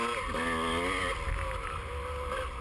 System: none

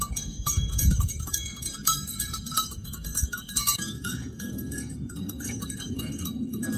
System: codec, SNAC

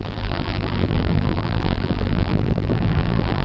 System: vocoder, BigVGAN v2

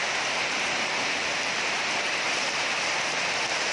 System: none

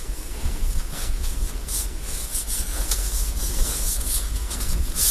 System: codec, SNAC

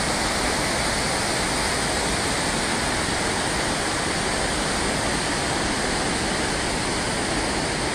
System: none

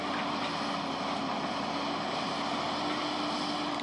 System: none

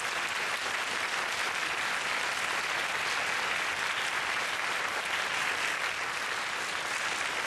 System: none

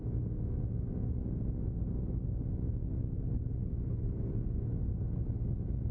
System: none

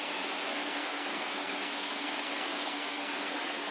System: codec, SNAC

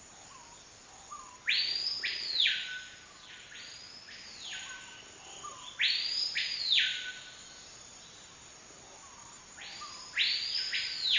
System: none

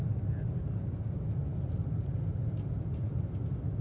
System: none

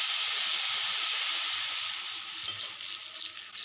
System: none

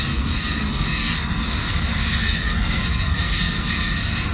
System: codec, SNAC